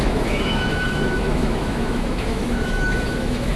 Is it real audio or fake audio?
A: fake